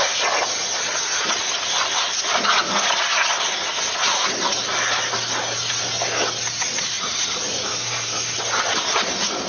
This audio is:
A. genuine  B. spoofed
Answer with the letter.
A